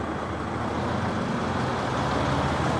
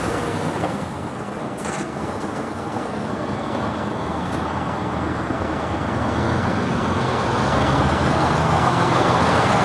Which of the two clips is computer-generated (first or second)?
second